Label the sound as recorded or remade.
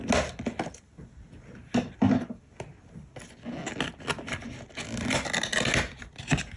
recorded